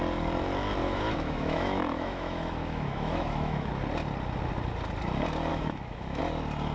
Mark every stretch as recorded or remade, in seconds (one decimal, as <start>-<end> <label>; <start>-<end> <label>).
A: 0.0-0.8 recorded; 0.8-3.7 remade; 3.7-5.5 recorded; 5.5-6.2 remade; 6.2-6.7 recorded